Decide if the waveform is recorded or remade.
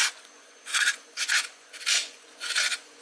remade